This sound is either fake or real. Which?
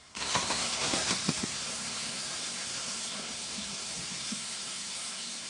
fake